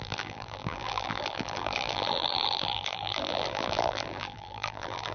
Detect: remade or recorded remade